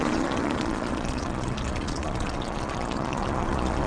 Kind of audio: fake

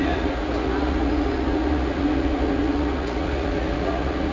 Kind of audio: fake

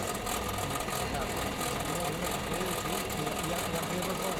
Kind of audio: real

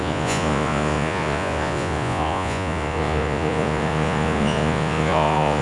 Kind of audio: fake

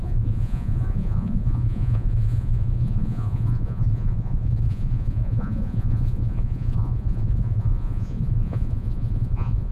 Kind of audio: fake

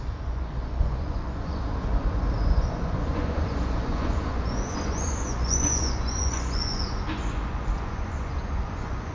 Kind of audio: fake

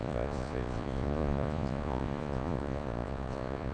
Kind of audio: fake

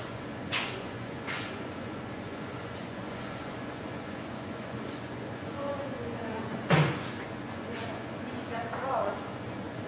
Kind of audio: fake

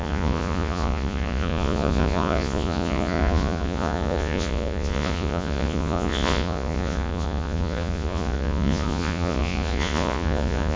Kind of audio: fake